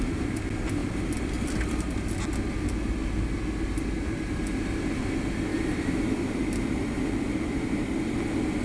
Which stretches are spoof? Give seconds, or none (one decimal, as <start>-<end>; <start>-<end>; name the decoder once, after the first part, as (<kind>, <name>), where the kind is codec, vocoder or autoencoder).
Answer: 5.5-6.4 (vocoder, BigVGAN v2)